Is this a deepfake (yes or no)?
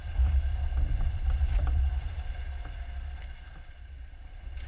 yes